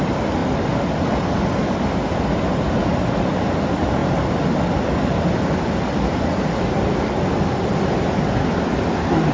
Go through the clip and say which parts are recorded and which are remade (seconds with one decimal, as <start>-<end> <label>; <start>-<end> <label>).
0.0-9.3 recorded

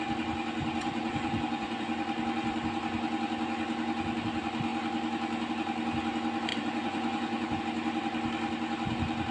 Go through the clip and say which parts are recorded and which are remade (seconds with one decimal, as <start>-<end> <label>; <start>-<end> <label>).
0.0-0.8 recorded; 0.8-1.9 remade; 1.9-6.5 recorded; 6.5-7.6 remade; 7.6-9.3 recorded

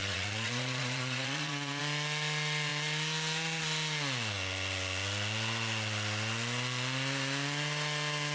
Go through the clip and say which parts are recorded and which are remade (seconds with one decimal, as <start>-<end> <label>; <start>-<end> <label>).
0.0-1.8 remade; 1.8-8.3 recorded

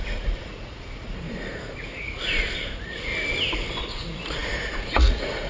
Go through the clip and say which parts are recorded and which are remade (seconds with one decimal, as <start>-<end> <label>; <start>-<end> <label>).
0.0-3.1 remade; 3.1-3.8 recorded; 3.8-5.5 remade